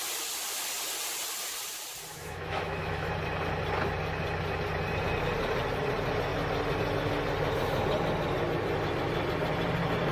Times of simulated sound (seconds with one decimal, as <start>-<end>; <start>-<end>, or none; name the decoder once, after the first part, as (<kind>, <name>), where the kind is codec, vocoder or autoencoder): 2.1-3.1 (autoencoder, DAC-VAE)